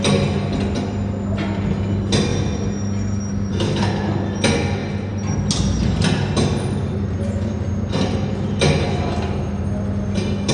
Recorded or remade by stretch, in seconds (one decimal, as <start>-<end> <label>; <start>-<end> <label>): 0.0-10.5 recorded